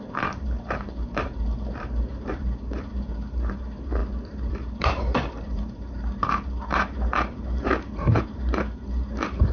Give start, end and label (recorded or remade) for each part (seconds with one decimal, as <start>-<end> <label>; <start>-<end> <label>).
0.0-9.5 remade